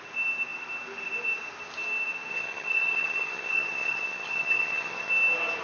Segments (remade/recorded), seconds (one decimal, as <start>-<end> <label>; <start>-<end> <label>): 0.0-2.3 recorded; 2.3-5.1 remade; 5.1-5.6 recorded